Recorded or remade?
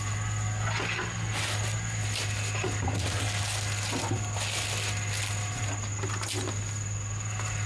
recorded